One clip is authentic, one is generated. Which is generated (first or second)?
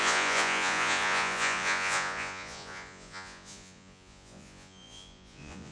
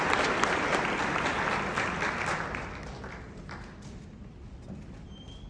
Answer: first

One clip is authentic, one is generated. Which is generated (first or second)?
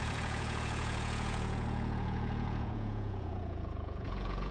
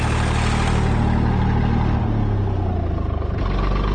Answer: first